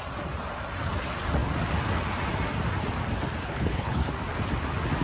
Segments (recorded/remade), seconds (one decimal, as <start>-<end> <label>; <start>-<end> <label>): 0.0-3.4 recorded; 3.4-4.1 remade; 4.1-5.0 recorded

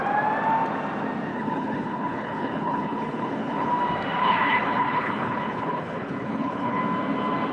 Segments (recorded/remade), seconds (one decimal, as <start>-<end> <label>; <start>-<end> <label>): 0.0-1.3 recorded; 1.3-3.7 remade; 3.7-4.2 recorded; 4.2-6.8 remade; 6.8-7.5 recorded

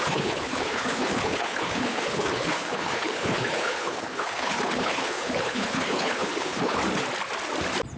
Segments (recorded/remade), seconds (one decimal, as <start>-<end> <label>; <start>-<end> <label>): 0.0-6.8 remade; 6.8-8.0 recorded

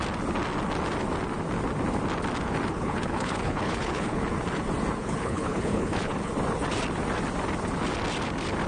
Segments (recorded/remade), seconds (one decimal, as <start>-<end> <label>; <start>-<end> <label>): 0.0-2.7 recorded; 2.7-4.2 remade; 4.2-5.0 recorded; 5.0-6.3 remade; 6.3-8.7 recorded